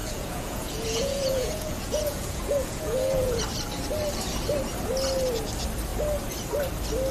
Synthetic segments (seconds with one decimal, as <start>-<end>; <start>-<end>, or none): 0.0-3.4